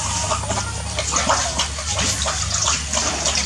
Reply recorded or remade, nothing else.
recorded